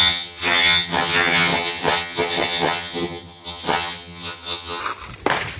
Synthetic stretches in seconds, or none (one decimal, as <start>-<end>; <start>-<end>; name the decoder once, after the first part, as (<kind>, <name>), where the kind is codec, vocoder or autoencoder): 0.0-4.8 (vocoder, HiFi-GAN)

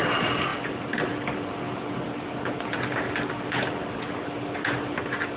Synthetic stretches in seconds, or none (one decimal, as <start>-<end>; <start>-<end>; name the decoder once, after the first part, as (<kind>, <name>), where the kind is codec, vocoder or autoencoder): none